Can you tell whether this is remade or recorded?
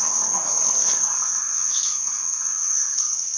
remade